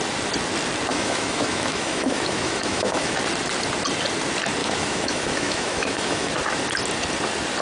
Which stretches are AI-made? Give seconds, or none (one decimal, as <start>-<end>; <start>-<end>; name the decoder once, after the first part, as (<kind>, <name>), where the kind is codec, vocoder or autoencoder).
0.9-3.2 (autoencoder, DAC-VAE); 4.6-6.3